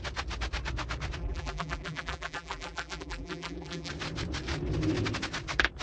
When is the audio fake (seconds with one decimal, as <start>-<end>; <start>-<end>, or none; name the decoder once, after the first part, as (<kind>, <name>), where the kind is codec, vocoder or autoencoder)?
1.2-3.9 (vocoder, BigVGAN v2)